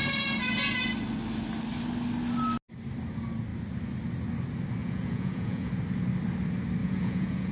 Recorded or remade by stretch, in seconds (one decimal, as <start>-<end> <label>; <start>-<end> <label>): 0.0-4.8 recorded; 4.8-5.7 remade; 5.7-6.8 recorded; 6.8-7.5 remade